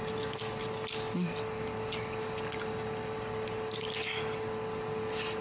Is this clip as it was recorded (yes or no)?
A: yes